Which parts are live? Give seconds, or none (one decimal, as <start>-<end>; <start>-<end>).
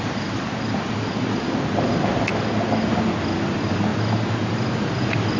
0.0-5.4